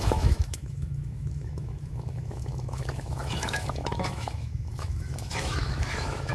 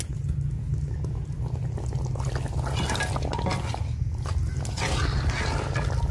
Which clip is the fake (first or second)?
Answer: first